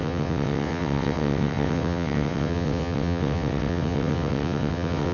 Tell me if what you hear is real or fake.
fake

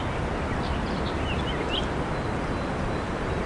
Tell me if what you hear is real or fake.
real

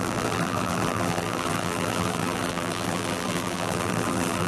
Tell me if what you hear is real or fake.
fake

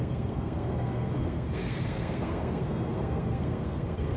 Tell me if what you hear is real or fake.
fake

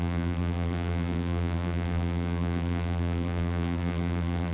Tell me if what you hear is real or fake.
fake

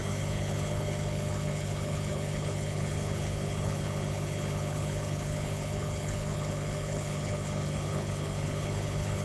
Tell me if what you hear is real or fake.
fake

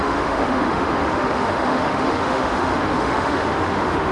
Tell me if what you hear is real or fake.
fake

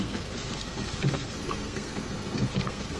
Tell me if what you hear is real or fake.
fake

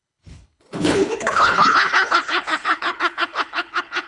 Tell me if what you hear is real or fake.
fake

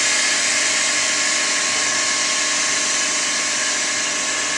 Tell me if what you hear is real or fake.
real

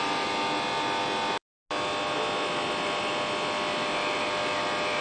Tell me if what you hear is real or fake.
real